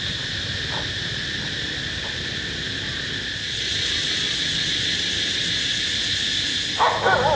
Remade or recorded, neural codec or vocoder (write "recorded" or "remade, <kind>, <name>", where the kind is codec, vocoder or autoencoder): recorded